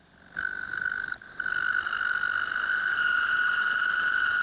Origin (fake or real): real